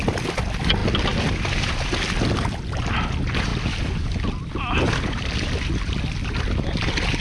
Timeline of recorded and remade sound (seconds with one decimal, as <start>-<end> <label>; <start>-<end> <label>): 0.0-7.2 recorded